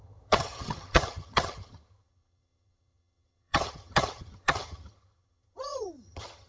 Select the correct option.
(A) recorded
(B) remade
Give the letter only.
B